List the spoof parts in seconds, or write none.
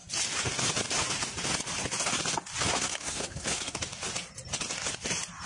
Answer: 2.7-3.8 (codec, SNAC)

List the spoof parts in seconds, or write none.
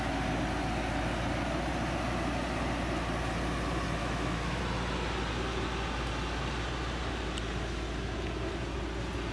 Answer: 4.0-4.6 (autoencoder, DAC-VAE)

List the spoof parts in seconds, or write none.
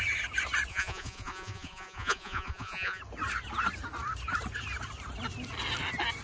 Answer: 0.7-3.0 (vocoder, Vocos)